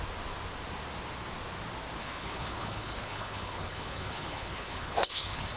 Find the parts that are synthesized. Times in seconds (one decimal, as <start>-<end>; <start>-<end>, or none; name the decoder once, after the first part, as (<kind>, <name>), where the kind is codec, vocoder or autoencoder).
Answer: 2.0-5.6 (codec, HILCodec)